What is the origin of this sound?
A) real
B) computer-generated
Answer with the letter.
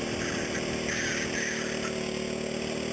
A